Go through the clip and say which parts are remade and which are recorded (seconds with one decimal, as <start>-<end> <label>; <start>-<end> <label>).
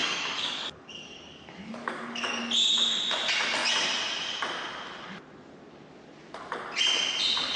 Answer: 0.0-2.4 remade; 2.4-7.6 recorded